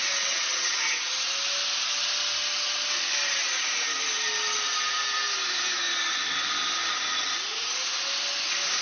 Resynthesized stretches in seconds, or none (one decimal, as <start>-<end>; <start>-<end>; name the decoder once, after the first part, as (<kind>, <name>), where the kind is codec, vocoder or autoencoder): 0.0-0.9 (vocoder, WaveNeXt)